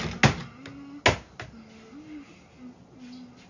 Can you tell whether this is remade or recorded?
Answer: recorded